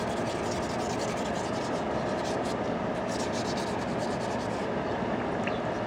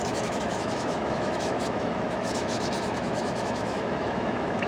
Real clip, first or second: first